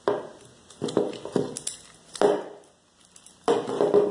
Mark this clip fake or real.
real